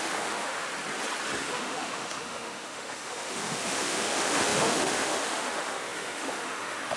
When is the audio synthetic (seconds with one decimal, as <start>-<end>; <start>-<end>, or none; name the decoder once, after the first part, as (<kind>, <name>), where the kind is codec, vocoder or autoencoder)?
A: 0.0-0.7 (autoencoder, DAC-VAE); 1.4-7.0